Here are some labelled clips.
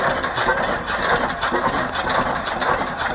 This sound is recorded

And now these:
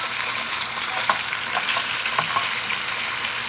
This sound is recorded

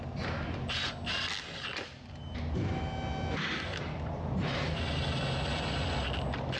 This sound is recorded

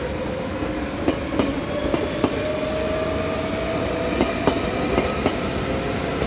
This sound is recorded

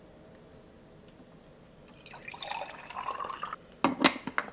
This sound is recorded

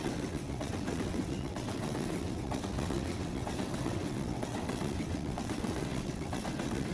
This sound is remade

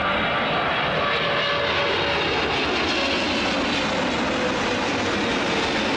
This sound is recorded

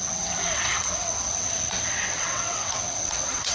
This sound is remade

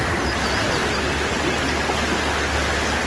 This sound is recorded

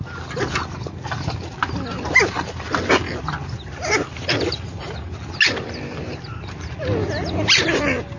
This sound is recorded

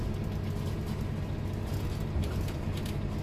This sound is recorded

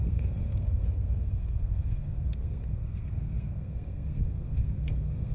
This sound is remade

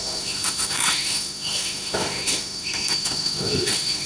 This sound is remade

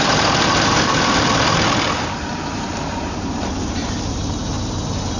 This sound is remade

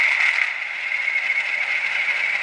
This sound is recorded